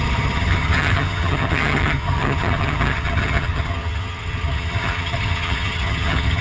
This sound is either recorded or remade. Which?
remade